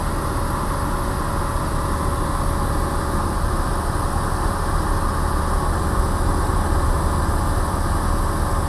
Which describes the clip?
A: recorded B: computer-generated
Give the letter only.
A